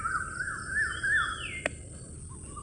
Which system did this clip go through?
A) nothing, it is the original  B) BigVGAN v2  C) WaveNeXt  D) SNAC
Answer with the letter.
A